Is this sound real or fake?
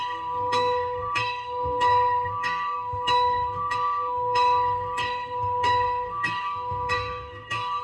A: fake